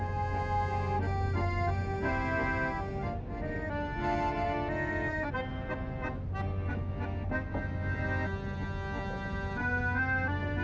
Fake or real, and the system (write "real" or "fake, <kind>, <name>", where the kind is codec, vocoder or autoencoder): real